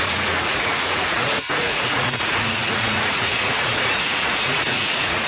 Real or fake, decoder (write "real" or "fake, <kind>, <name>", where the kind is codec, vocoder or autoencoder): fake, vocoder, Vocos